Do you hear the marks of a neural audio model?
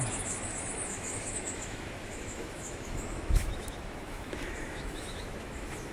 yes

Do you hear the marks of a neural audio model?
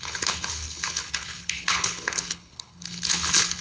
yes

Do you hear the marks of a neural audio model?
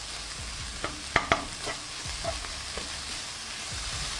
no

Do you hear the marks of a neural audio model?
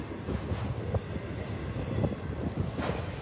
no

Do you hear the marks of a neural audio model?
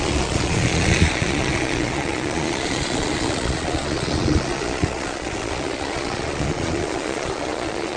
yes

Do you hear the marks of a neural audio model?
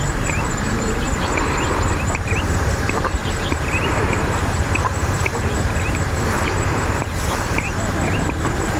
yes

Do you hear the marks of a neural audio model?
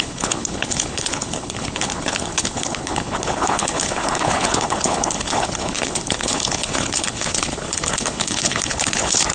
yes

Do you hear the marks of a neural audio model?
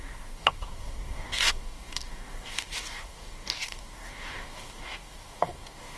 yes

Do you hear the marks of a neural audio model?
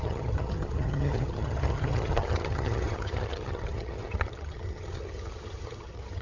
yes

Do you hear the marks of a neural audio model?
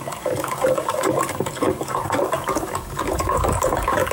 yes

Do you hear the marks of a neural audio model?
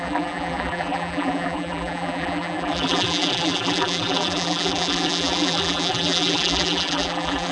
yes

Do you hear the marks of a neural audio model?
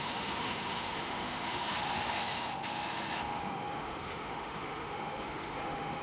yes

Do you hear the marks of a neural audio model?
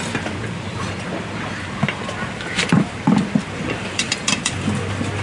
yes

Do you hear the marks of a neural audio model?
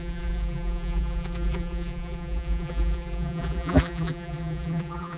yes